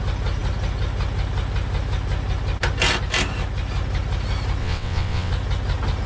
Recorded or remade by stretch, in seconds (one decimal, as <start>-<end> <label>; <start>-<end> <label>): 0.0-4.6 recorded; 4.6-5.3 remade; 5.3-6.1 recorded